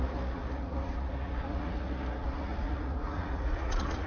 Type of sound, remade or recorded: remade